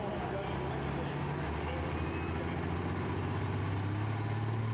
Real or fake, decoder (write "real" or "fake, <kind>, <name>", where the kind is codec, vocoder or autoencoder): real